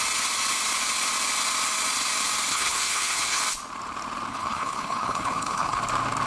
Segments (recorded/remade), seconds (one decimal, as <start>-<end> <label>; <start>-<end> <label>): 0.0-2.5 recorded; 2.5-3.4 remade; 3.4-4.3 recorded; 4.3-5.8 remade; 5.8-6.3 recorded